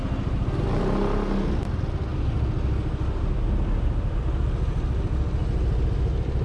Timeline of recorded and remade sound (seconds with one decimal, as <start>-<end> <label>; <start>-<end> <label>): 0.0-6.4 recorded